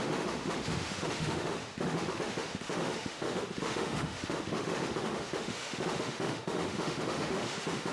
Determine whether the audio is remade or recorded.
remade